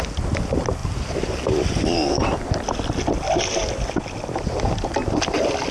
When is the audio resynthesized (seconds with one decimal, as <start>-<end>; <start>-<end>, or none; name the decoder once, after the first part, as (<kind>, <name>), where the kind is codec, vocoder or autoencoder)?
none